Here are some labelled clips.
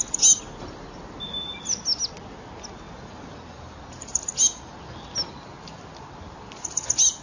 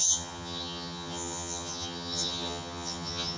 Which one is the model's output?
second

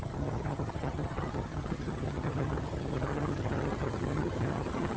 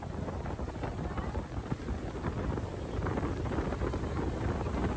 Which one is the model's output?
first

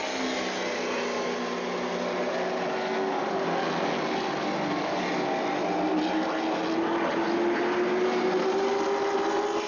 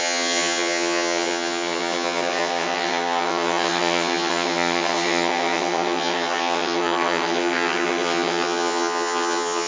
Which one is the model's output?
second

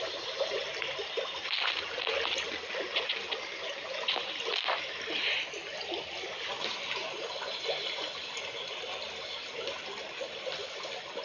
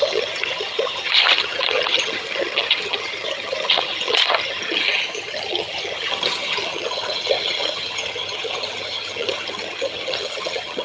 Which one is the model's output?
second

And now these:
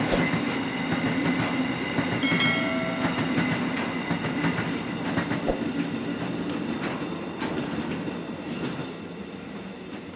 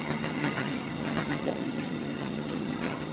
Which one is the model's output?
second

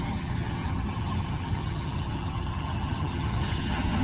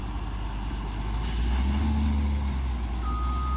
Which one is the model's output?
first